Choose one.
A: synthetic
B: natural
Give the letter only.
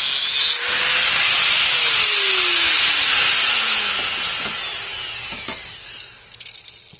B